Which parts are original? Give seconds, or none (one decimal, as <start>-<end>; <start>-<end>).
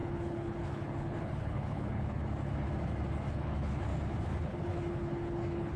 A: 2.2-3.3; 3.9-4.4